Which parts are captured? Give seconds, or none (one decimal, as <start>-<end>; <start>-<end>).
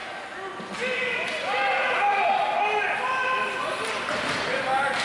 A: 0.0-5.0